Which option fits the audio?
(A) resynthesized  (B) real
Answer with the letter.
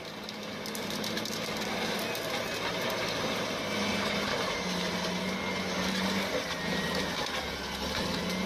B